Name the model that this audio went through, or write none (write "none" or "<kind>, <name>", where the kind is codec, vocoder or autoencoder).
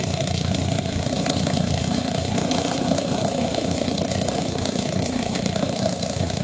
codec, SNAC